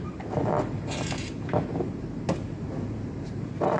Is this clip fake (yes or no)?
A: no